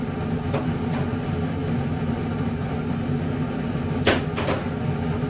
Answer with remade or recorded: recorded